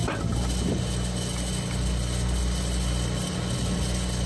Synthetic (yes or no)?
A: no